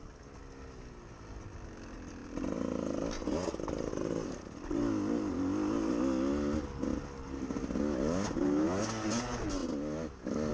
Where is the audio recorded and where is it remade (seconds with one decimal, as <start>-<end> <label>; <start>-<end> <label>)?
0.0-10.5 recorded